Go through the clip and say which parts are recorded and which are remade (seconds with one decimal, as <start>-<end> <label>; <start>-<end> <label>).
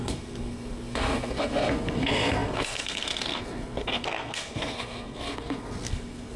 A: 0.0-6.4 remade